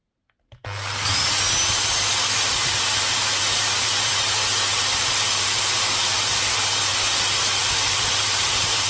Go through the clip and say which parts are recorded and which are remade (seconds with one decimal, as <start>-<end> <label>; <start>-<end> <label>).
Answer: 0.0-3.4 recorded; 3.4-4.4 remade; 4.4-7.6 recorded; 7.6-8.9 remade